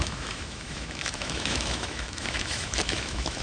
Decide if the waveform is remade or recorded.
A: remade